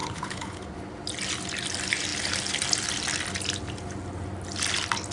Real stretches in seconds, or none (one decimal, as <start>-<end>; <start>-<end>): 0.6-5.1

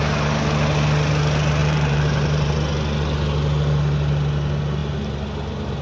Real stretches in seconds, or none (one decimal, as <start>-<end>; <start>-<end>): 0.0-1.6; 2.5-5.8

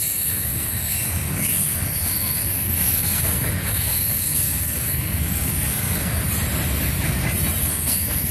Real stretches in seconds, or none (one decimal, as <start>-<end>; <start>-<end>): 6.2-7.6

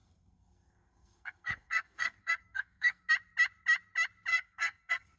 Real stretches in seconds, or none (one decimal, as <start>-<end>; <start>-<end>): 3.1-4.3